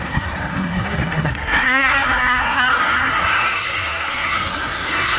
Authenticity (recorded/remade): remade